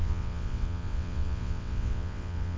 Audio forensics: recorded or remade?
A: remade